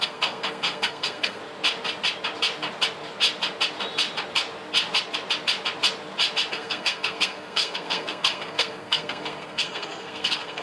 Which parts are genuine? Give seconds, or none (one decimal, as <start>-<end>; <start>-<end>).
1.4-6.5